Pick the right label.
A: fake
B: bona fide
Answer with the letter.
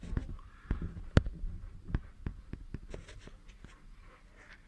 B